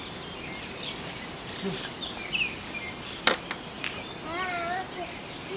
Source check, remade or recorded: recorded